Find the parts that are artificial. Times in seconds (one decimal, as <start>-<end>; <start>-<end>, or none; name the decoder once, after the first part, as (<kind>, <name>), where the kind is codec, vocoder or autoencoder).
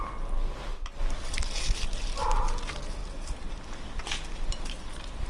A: 0.7-2.5 (vocoder, BigVGAN v2); 3.0-5.3